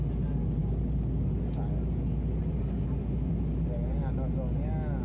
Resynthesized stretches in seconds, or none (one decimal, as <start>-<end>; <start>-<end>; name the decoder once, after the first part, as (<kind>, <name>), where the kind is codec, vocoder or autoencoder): none